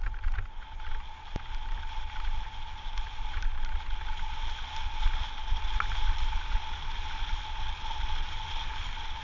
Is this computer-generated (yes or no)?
no